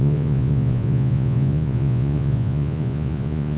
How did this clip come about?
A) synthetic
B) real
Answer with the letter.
A